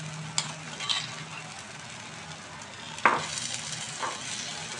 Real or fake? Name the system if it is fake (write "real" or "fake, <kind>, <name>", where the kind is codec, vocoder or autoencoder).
real